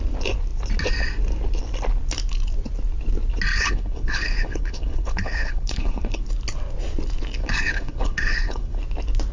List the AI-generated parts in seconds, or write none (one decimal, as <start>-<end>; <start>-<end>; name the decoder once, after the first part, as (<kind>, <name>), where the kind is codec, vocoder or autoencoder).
3.5-6.2 (codec, HILCodec); 7.4-8.8